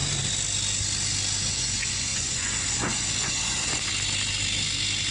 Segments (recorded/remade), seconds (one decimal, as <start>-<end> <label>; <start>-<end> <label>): 0.0-1.5 recorded; 1.5-3.9 remade; 3.9-5.1 recorded